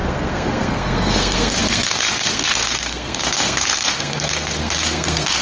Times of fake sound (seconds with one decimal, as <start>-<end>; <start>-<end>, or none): 0.0-5.4